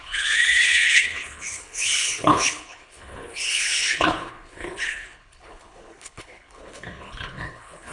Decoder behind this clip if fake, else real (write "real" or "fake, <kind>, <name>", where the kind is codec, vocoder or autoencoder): fake, codec, HILCodec